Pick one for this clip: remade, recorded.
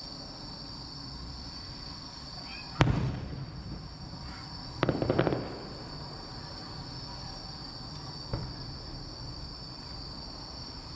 recorded